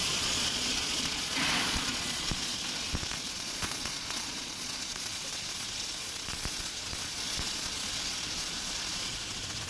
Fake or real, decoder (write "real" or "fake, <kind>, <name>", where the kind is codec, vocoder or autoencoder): fake, vocoder, Vocos